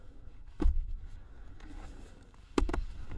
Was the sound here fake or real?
fake